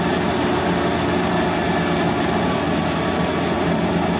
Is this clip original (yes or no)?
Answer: yes